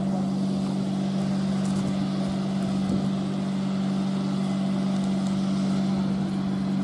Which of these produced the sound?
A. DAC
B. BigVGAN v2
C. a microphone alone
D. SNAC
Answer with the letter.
C